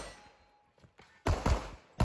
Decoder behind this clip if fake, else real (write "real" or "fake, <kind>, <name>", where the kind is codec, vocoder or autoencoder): real